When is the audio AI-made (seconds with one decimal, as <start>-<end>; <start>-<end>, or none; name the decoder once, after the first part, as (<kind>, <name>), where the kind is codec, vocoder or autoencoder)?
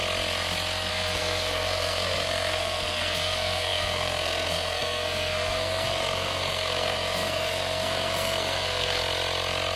0.9-9.0 (codec, SNAC)